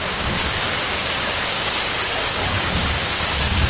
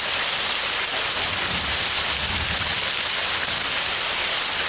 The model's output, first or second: first